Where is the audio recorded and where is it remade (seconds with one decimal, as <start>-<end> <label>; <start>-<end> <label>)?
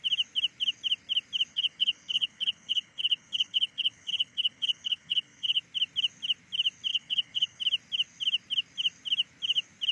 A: 0.0-1.5 recorded; 1.5-5.6 remade; 5.6-6.9 recorded; 6.9-7.6 remade; 7.6-9.9 recorded